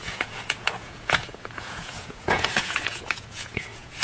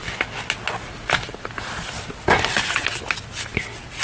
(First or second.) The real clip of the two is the second